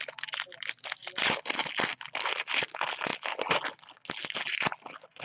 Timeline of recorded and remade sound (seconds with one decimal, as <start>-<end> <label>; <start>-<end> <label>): 0.0-5.2 recorded